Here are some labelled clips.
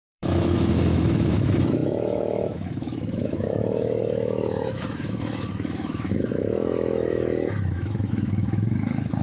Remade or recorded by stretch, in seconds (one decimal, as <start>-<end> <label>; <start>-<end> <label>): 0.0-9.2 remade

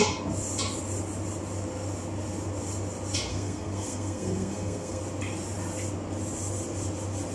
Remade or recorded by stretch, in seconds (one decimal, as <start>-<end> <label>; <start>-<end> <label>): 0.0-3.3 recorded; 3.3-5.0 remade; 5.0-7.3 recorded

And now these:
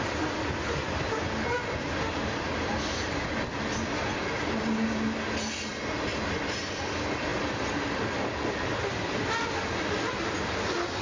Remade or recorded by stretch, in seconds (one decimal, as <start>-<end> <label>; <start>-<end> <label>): 0.0-11.0 recorded

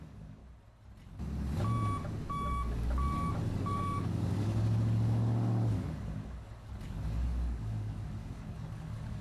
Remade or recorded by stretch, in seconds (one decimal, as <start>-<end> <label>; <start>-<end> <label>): 0.0-0.4 remade; 0.4-2.3 recorded; 2.3-9.2 remade

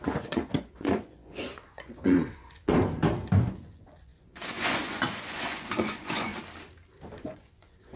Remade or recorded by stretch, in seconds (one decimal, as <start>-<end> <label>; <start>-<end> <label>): 0.0-2.7 remade; 2.7-3.4 recorded; 3.4-6.3 remade; 6.3-7.1 recorded; 7.1-8.0 remade

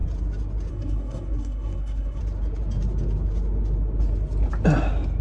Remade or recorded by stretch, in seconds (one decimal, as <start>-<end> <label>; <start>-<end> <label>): 0.0-0.7 recorded; 0.7-2.2 remade; 2.2-5.2 recorded